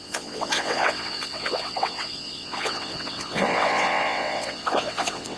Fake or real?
fake